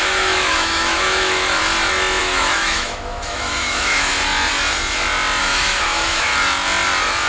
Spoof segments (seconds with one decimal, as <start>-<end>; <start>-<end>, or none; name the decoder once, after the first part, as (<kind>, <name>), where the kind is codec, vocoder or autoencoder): 0.0-1.6 (autoencoder, DAC-VAE); 2.2-4.1; 5.4-6.3